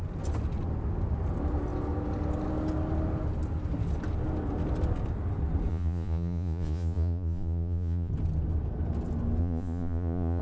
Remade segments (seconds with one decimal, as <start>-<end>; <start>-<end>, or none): 5.7-8.1; 9.4-10.4